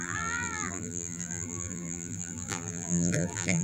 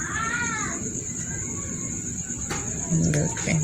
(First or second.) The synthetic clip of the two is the first